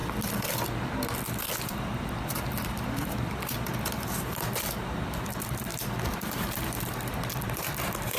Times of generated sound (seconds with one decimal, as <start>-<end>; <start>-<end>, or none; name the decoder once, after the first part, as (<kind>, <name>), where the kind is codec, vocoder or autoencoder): 1.4-5.7 (vocoder, BigVGAN v2); 6.8-8.2